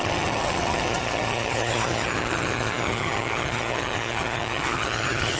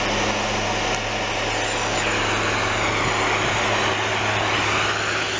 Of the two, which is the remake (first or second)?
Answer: first